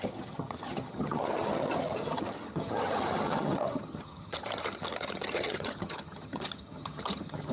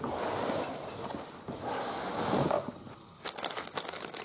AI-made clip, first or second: first